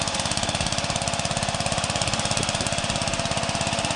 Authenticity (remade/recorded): recorded